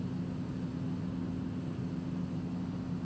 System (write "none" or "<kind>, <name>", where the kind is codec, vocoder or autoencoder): none